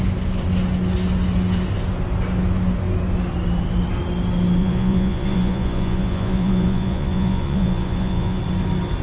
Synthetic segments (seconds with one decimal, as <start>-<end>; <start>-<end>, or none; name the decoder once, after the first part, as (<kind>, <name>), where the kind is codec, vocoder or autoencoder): 4.6-8.4 (vocoder, Vocos)

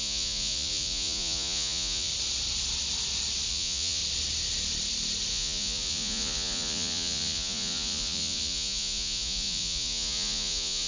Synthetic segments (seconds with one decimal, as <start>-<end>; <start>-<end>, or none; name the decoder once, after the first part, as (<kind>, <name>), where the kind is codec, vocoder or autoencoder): 0.0-2.1 (vocoder, Vocos); 3.5-4.0; 5.3-10.9

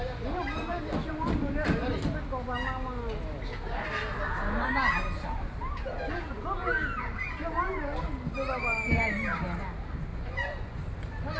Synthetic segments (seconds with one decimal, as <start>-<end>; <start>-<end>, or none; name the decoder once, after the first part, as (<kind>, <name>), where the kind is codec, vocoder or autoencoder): 10.1-10.8 (vocoder, Vocos)